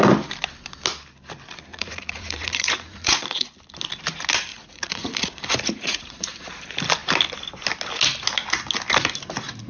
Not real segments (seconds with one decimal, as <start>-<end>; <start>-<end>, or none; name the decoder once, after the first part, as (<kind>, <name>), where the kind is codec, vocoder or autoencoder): 1.7-3.5 (vocoder, Vocos); 4.5-6.5